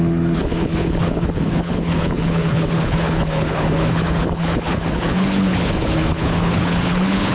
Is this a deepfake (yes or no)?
yes